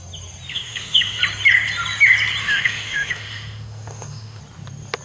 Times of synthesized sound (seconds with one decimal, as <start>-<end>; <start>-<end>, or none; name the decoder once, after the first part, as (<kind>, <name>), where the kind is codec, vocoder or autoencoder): 0.5-1.2 (autoencoder, DAC-VAE); 2.4-4.4